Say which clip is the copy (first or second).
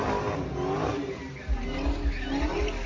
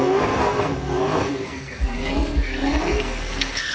second